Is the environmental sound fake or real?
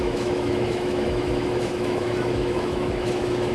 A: fake